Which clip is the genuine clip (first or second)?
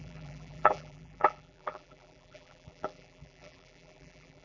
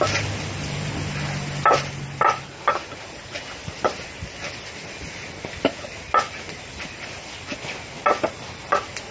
second